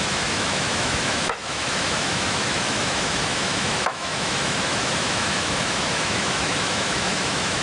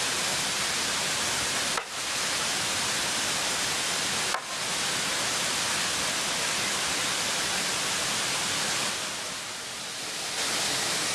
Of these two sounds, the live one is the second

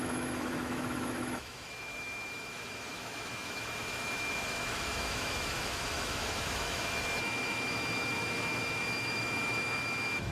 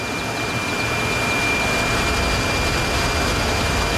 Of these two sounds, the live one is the second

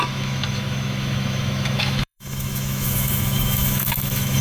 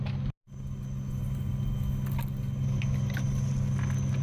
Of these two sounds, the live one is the second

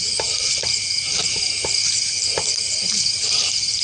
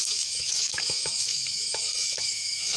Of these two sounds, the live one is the first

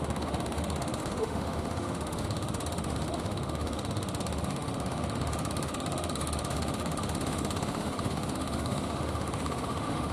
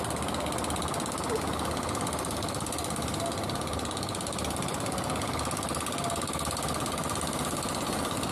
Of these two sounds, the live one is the second